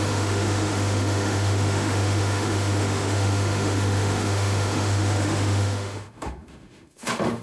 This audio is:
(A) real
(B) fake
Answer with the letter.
B